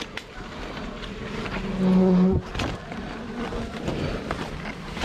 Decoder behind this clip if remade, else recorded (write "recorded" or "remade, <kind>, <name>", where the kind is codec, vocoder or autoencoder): recorded